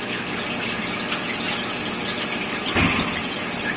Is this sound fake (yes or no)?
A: no